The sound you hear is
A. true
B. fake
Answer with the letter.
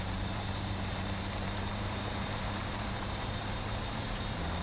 B